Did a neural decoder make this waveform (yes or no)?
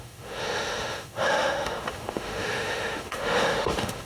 yes